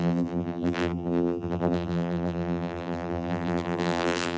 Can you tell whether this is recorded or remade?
remade